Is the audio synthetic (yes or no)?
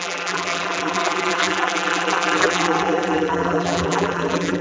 yes